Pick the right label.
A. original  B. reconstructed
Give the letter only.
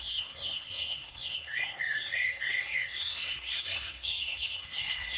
B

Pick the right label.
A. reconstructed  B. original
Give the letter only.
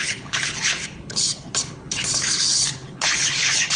A